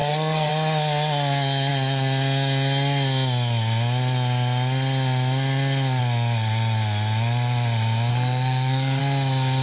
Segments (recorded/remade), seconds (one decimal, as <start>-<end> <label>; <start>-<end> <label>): 0.0-0.5 remade; 0.5-8.1 recorded; 8.1-9.0 remade; 9.0-9.6 recorded